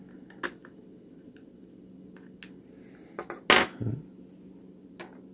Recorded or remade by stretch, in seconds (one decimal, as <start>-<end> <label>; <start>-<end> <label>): 0.0-5.3 recorded